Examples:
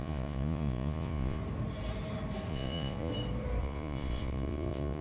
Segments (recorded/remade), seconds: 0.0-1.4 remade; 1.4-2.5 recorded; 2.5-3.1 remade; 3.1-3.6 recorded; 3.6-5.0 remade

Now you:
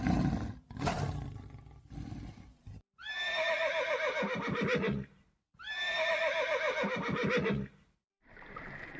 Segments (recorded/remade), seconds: 0.0-9.0 recorded